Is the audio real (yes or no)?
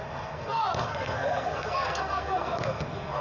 no